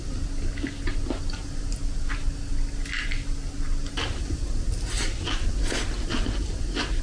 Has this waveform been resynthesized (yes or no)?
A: no